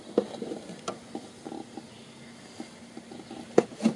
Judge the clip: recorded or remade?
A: recorded